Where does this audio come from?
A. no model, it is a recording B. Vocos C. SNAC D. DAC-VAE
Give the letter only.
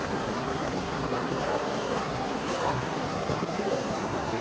C